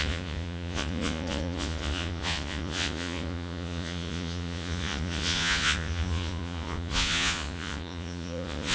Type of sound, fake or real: fake